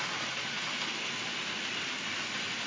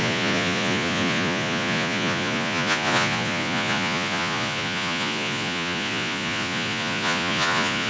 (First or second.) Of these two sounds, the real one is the first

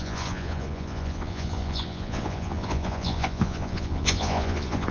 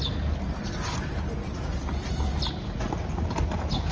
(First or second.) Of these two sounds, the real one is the second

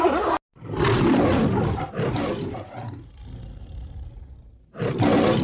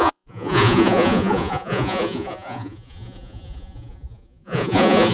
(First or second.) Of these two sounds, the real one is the first